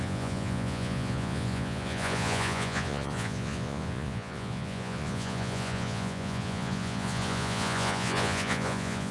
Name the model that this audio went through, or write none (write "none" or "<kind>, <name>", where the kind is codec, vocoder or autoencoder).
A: vocoder, Vocos